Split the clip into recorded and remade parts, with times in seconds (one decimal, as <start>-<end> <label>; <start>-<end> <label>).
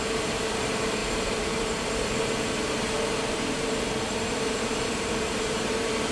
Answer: 0.0-6.1 remade